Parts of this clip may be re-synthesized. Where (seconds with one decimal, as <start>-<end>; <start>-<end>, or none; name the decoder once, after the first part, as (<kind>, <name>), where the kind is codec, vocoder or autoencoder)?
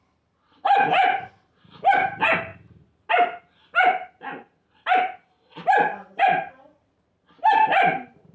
0.0-2.5 (vocoder, BigVGAN v2); 6.2-8.3